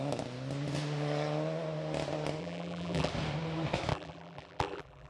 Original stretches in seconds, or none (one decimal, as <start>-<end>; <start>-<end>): 0.0-2.4; 3.1-3.9